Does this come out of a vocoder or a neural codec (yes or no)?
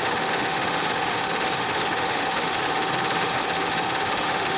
yes